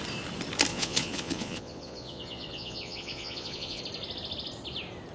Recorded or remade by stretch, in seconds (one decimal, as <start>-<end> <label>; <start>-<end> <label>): 0.0-0.7 recorded; 0.7-3.8 remade; 3.8-5.1 recorded